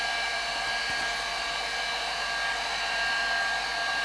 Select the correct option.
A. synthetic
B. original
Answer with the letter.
B